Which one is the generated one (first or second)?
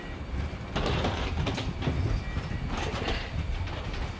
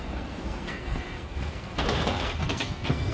second